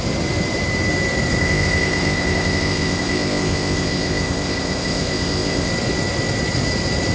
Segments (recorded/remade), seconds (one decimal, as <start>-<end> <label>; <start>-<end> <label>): 0.0-1.4 recorded; 1.4-5.7 remade; 5.7-7.1 recorded